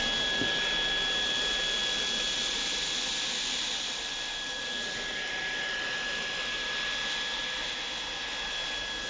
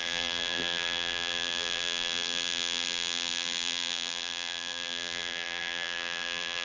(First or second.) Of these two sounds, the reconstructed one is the second